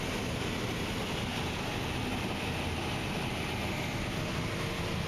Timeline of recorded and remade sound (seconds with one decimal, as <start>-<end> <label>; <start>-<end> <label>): 0.0-5.1 recorded